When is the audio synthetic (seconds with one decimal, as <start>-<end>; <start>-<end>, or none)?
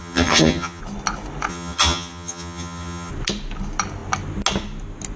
0.0-0.8; 1.5-3.1